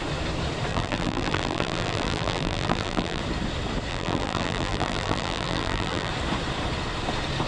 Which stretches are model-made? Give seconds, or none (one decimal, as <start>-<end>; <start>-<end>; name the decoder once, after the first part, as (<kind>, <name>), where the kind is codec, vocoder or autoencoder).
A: 0.7-3.2 (vocoder, BigVGAN v2); 3.9-6.1